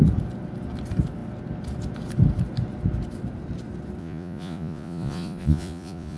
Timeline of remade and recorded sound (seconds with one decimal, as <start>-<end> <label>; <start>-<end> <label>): 0.0-4.0 recorded; 4.0-6.2 remade